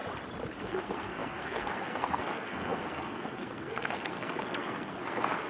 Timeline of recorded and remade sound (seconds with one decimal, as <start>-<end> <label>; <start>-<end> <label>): 0.0-0.6 recorded; 0.6-5.5 remade